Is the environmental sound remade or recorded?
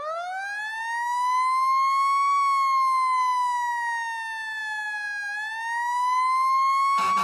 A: recorded